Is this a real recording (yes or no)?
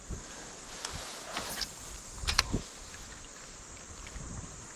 yes